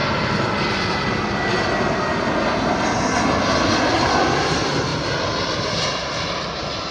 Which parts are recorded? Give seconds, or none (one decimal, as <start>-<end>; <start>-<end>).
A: 0.0-4.1; 4.9-5.8